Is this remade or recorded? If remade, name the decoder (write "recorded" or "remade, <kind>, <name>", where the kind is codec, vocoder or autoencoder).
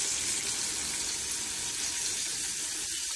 recorded